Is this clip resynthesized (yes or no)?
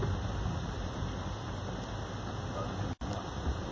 no